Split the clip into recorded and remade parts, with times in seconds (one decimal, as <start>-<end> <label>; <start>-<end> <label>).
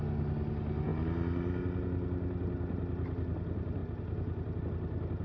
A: 0.0-5.2 recorded